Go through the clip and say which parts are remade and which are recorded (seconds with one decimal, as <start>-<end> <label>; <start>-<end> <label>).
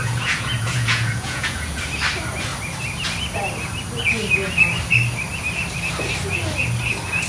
0.0-1.8 remade; 1.8-7.3 recorded